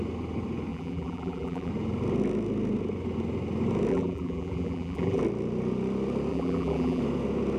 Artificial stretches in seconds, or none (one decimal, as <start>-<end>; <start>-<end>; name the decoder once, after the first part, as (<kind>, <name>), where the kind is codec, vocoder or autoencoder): 0.7-1.7 (vocoder, BigVGAN v2); 3.9-5.2; 6.3-7.0